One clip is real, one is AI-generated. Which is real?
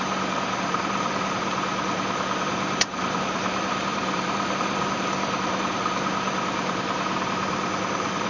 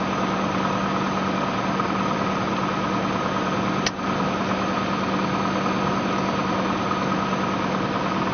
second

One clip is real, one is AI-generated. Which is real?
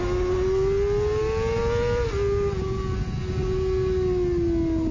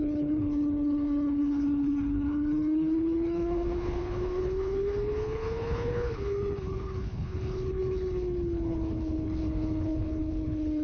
first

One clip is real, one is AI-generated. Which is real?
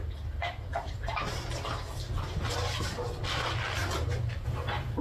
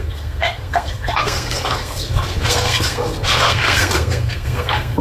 first